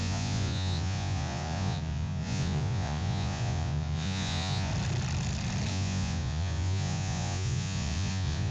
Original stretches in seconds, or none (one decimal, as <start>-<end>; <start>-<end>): 4.7-5.7